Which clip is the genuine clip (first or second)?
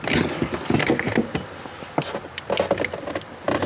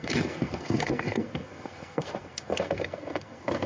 first